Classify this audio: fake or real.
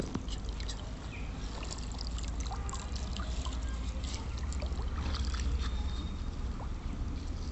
real